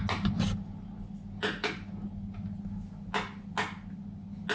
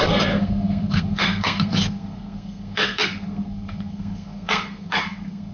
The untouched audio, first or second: first